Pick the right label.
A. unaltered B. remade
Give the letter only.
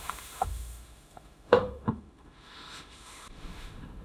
B